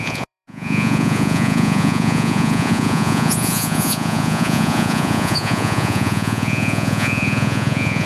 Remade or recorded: remade